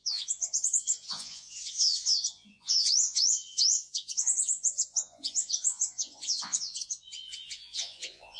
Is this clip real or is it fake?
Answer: fake